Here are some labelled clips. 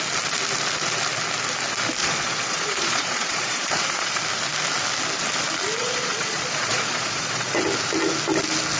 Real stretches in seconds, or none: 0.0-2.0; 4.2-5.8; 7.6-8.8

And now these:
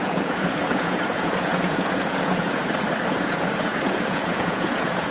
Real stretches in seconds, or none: 2.6-3.1

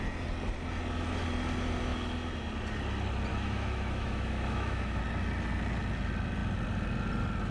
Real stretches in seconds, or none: 0.0-3.3; 5.0-7.5

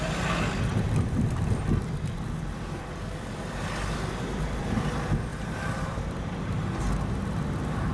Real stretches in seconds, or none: 0.0-0.7; 4.6-5.3; 6.4-7.9